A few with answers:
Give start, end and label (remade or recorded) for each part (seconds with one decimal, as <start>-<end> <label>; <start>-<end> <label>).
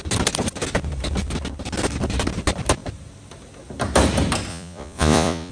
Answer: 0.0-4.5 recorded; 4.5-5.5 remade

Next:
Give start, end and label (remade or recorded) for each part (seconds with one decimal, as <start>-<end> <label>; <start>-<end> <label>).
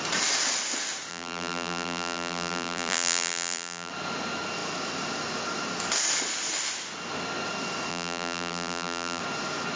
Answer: 0.0-1.1 recorded; 1.1-3.9 remade; 3.9-7.9 recorded; 7.9-9.2 remade; 9.2-9.8 recorded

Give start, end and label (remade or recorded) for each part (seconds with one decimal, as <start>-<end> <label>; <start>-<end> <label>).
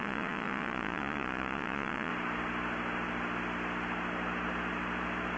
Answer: 0.0-2.1 remade; 2.1-5.4 recorded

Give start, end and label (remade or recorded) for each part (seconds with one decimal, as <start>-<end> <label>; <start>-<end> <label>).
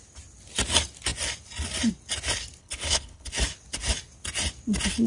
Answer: 0.0-2.6 recorded; 2.6-3.3 remade; 3.3-5.1 recorded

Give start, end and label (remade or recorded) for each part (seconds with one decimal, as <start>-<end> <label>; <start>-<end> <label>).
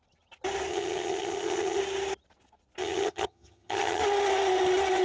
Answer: 0.0-0.7 recorded; 0.7-1.8 remade; 1.8-2.8 recorded; 2.8-4.0 remade; 4.0-5.0 recorded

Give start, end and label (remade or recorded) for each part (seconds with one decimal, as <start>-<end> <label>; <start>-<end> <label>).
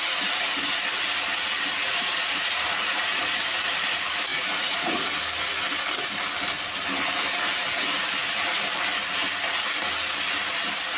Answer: 0.0-1.7 recorded; 1.7-3.4 remade; 3.4-4.3 recorded; 4.3-5.1 remade; 5.1-11.0 recorded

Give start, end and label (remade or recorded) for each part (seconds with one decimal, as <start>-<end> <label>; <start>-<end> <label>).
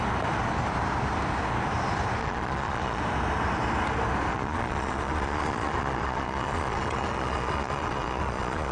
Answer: 0.0-2.2 recorded; 2.2-3.0 remade; 3.0-4.3 recorded; 4.3-8.7 remade